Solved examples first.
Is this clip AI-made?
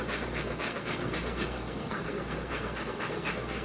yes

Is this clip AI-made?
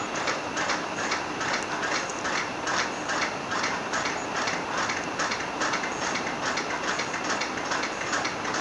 no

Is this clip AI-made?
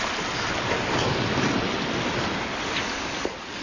no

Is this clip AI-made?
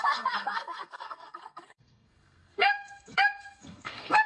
yes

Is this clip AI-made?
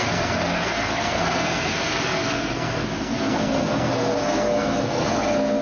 yes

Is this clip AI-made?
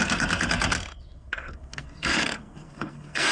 yes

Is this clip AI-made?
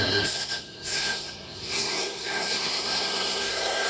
yes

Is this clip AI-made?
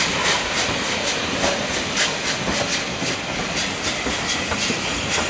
no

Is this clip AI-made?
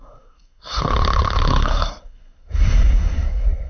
yes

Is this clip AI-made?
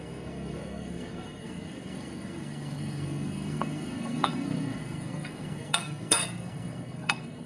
yes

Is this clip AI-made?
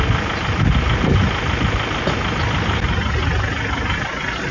no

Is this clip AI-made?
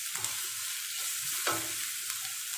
no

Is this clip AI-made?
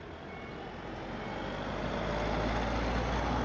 no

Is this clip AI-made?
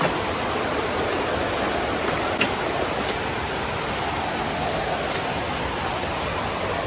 no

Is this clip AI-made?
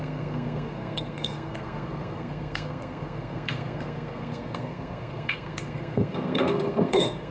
yes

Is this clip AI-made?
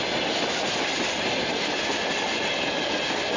no